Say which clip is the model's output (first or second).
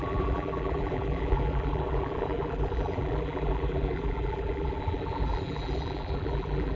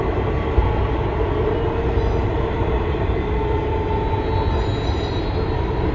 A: first